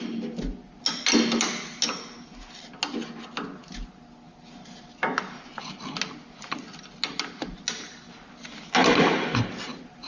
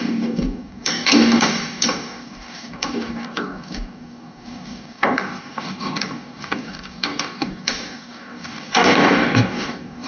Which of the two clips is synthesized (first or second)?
second